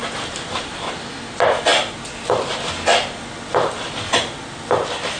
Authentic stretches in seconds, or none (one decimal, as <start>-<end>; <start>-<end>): 0.7-5.2